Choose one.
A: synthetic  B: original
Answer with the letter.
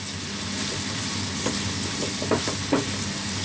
B